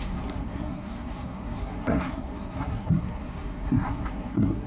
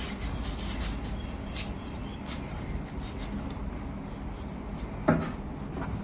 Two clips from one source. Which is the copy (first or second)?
first